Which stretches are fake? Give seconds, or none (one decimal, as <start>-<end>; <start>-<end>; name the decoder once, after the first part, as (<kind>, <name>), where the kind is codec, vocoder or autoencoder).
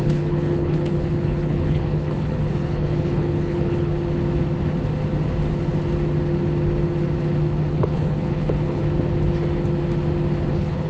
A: 0.0-3.9 (codec, HILCodec); 7.7-8.8; 10.5-10.9